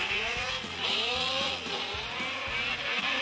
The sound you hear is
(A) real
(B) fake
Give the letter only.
B